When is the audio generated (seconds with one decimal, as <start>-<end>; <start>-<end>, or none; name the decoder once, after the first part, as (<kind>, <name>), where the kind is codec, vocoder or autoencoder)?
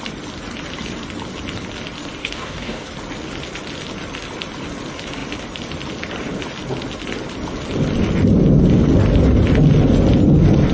2.2-2.9 (codec, DAC)